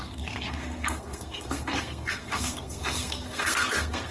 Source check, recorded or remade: remade